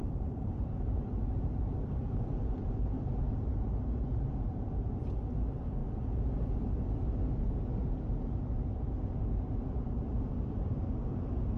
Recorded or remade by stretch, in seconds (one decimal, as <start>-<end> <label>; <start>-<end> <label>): 0.0-5.1 remade; 5.1-11.6 recorded